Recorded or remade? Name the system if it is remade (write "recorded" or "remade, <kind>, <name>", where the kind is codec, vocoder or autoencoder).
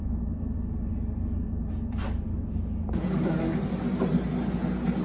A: recorded